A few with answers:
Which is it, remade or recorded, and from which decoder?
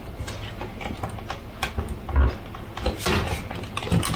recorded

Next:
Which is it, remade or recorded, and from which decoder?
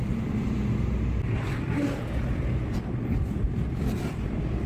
recorded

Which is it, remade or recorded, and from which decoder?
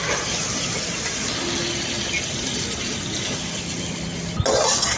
recorded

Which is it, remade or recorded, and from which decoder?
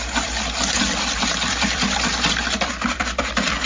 remade, vocoder, BigVGAN v2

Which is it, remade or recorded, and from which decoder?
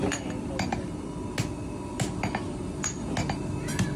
recorded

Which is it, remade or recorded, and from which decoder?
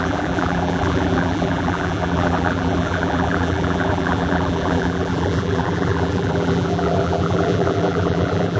remade, vocoder, BigVGAN v2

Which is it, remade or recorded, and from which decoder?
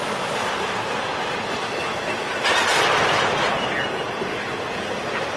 recorded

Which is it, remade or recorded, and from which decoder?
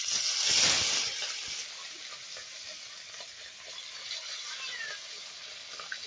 recorded